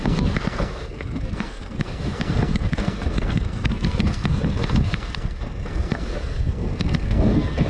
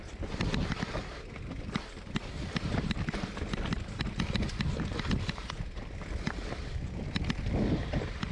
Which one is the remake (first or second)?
first